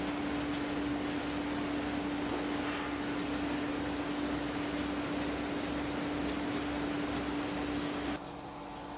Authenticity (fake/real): real